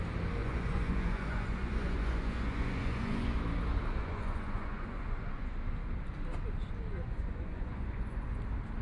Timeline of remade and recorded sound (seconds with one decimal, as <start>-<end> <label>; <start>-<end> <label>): 0.0-0.4 recorded; 0.4-3.4 remade; 3.4-4.0 recorded; 4.0-5.5 remade; 5.5-6.9 recorded; 6.9-8.4 remade; 8.4-8.8 recorded